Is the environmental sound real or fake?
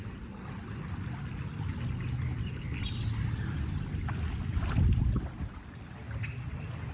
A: real